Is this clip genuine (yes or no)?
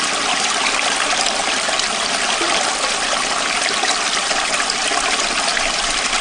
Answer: yes